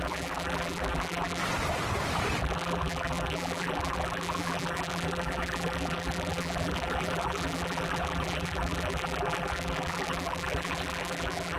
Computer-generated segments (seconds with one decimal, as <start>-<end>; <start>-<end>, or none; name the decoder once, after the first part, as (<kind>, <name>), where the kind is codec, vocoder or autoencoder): 0.0-1.4 (vocoder, BigVGAN v2); 2.4-11.6